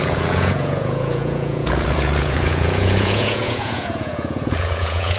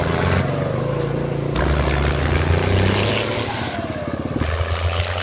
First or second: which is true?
second